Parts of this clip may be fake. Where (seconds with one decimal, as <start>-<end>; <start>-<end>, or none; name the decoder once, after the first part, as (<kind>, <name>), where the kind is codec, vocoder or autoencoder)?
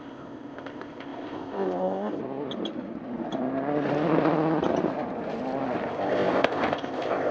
0.0-2.2 (codec, ZipCodec); 5.9-7.3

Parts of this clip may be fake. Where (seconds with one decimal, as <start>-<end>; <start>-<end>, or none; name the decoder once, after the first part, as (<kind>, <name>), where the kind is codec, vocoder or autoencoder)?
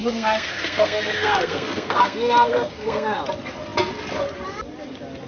0.0-3.2 (codec, SNAC)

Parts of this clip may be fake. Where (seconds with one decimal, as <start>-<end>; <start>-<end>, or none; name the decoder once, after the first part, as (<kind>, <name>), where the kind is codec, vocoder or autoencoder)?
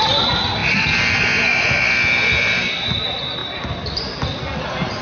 none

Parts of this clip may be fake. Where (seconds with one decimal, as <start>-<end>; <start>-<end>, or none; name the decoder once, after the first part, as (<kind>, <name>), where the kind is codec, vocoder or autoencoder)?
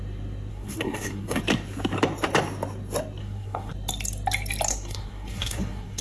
0.5-1.4 (codec, SNAC); 3.2-3.7; 4.7-6.0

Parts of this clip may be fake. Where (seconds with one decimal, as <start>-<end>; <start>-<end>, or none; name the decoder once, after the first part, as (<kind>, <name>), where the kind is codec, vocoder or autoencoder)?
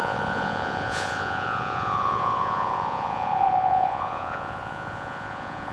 0.0-5.7 (vocoder, Vocos)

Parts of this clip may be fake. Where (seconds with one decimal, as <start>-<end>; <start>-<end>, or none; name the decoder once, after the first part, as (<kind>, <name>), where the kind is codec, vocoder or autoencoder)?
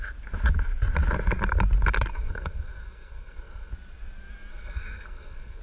2.1-3.7 (codec, SNAC); 4.5-5.6